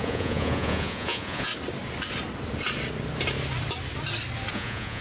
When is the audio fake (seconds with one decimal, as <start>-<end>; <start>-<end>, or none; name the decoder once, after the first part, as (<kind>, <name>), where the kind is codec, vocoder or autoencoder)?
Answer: 0.0-1.5 (vocoder, Vocos); 4.5-5.0